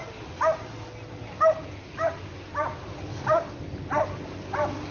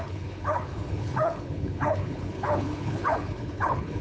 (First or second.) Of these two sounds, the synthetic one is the second